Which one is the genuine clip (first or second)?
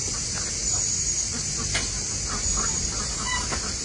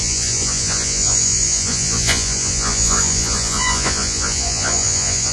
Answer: first